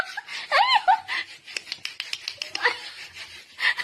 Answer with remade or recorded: recorded